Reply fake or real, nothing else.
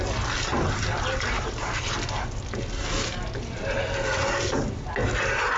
real